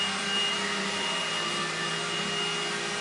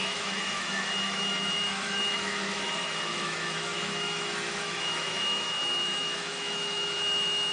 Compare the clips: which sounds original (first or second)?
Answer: first